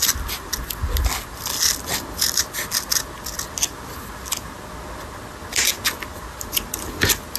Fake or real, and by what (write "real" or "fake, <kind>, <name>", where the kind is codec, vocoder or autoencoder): real